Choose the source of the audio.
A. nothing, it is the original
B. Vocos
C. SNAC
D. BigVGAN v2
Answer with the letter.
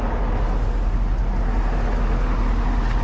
A